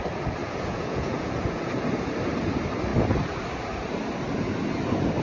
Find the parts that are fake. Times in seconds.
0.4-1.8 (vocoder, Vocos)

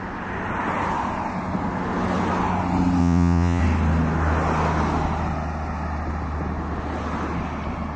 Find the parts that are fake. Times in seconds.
3.0-3.6 (vocoder, Vocos)

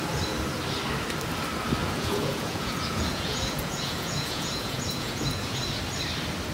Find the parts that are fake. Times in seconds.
1.8-5.6 (vocoder, Vocos)